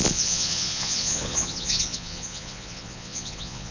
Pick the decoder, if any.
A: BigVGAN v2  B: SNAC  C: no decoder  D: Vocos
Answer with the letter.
D